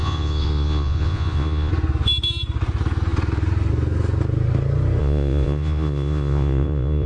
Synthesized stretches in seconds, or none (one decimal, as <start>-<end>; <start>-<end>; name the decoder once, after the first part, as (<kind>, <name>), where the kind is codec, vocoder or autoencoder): 0.0-1.7 (vocoder, Vocos); 5.0-7.1